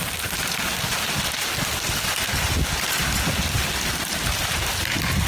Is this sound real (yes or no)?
yes